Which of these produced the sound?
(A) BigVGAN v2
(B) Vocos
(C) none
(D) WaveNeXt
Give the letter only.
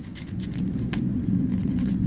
B